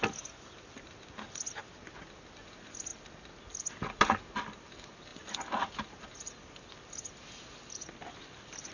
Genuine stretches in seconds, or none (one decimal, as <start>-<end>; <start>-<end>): 0.0-8.7